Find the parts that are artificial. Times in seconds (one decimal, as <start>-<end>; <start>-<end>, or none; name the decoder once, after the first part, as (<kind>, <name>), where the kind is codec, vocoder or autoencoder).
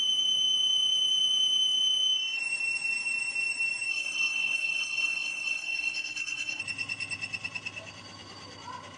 3.9-6.6 (codec, SNAC)